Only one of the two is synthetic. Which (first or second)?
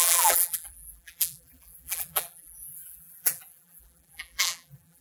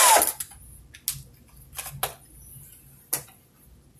first